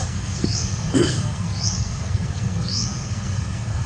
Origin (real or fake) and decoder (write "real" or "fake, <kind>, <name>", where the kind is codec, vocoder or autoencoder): fake, codec, SNAC